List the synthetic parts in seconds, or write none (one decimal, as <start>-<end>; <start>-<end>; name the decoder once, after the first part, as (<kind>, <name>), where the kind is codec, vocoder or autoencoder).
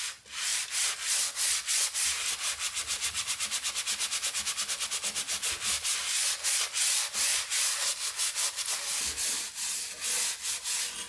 0.5-1.1 (vocoder, BigVGAN v2); 2.8-3.4; 7.3-7.9